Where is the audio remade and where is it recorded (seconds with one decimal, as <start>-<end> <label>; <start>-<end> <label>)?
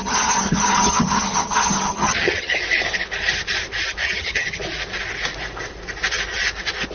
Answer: 0.0-2.6 remade; 2.6-4.0 recorded; 4.0-4.6 remade; 4.6-6.9 recorded